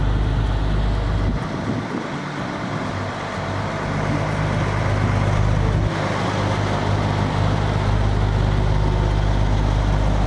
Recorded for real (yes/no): yes